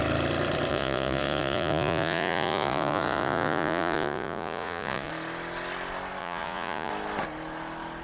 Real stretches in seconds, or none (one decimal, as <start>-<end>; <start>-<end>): 0.0-0.7; 5.1-6.2; 6.9-8.0